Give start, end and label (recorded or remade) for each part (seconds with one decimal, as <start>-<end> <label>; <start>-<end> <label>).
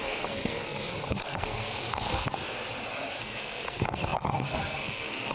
0.0-2.4 remade; 2.4-3.2 recorded; 3.2-5.3 remade